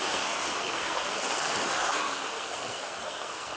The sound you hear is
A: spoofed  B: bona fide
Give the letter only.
A